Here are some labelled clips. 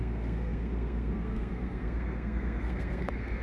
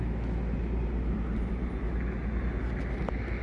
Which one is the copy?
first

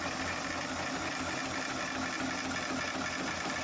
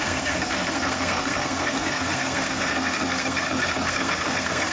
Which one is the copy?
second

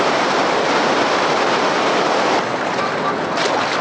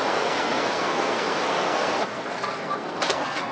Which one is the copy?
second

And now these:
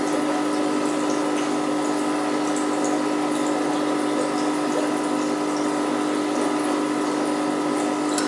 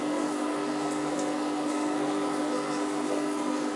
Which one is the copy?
second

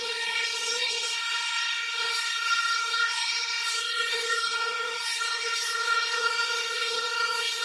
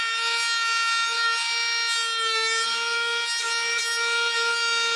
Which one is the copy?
first